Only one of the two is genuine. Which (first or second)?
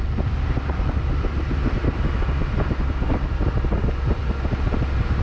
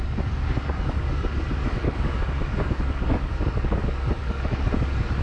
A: first